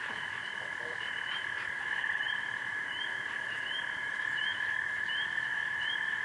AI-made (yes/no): yes